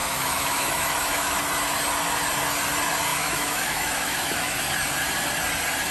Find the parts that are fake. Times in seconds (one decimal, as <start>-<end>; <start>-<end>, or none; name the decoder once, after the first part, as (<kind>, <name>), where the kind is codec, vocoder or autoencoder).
0.0-1.4 (autoencoder, DAC-VAE); 3.1-4.6